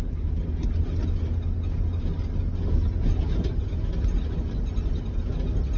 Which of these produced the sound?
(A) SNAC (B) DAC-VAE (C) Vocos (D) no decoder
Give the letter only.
D